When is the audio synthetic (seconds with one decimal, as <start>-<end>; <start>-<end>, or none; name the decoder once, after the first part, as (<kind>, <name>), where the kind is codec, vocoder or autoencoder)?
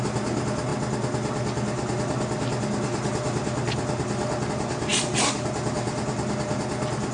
none